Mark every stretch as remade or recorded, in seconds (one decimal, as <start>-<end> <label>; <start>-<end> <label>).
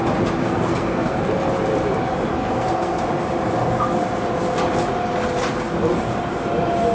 0.0-0.4 recorded; 0.4-1.2 remade; 1.2-2.3 recorded; 2.3-3.0 remade; 3.0-6.9 recorded